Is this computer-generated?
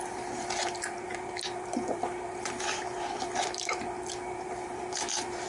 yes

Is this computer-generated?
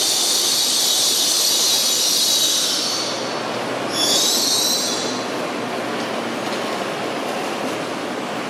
no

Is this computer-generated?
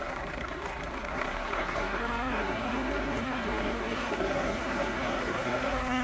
yes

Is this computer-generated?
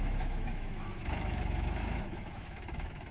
yes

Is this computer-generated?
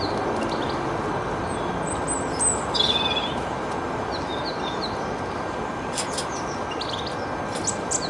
no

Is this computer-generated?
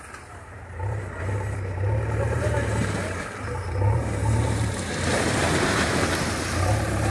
yes